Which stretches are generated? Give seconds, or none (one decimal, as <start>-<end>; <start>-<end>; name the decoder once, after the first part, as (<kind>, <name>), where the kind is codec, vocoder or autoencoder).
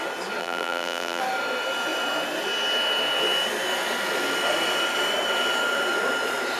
0.4-1.2 (vocoder, BigVGAN v2)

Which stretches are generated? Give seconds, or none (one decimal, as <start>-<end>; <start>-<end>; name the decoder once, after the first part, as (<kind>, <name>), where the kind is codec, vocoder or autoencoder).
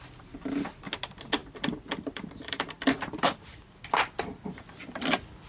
1.4-3.4 (vocoder, BigVGAN v2)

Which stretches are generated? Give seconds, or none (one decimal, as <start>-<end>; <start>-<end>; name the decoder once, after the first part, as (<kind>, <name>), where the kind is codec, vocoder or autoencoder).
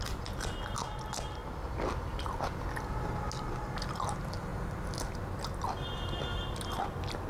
none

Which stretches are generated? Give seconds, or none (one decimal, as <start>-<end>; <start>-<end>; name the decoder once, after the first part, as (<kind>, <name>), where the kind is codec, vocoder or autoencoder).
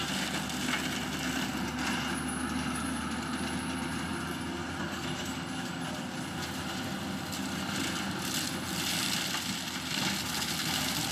none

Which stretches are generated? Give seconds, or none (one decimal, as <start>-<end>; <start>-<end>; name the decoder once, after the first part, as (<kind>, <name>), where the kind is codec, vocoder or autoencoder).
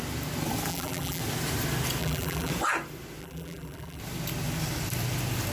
0.7-1.2 (vocoder, BigVGAN v2); 2.0-2.5; 3.2-4.0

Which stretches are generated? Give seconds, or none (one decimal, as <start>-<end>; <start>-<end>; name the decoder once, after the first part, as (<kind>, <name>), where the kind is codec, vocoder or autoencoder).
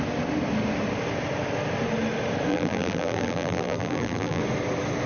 2.5-4.4 (vocoder, BigVGAN v2)